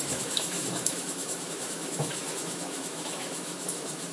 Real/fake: fake